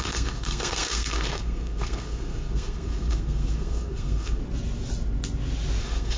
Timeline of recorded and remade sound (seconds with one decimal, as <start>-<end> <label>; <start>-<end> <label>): 0.0-4.4 remade; 4.4-5.8 recorded; 5.8-6.2 remade